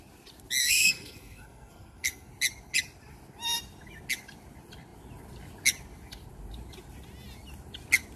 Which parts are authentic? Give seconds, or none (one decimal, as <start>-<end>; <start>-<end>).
0.0-0.6; 2.3-8.2